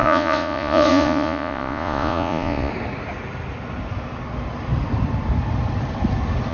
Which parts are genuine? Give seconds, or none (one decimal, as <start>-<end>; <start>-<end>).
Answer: 2.7-6.5